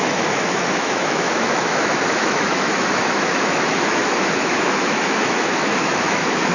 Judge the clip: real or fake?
fake